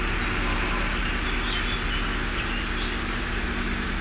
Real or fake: real